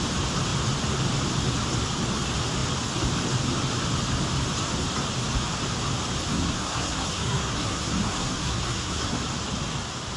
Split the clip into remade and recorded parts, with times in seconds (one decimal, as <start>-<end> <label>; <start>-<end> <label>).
0.0-6.3 recorded; 6.3-9.2 remade; 9.2-10.2 recorded